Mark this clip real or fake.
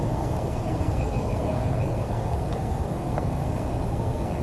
fake